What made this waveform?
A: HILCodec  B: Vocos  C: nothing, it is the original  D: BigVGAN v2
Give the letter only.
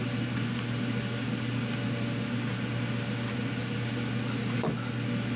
C